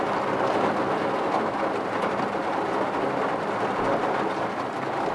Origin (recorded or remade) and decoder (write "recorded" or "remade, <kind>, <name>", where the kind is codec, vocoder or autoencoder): recorded